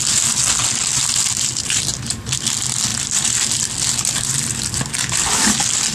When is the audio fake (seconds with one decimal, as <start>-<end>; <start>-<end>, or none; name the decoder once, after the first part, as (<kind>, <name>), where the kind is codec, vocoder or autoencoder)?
none